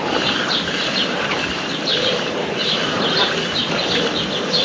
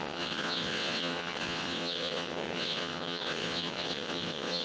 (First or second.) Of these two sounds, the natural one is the first